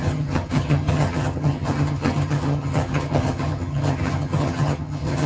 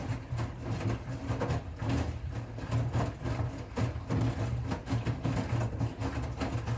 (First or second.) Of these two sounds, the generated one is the first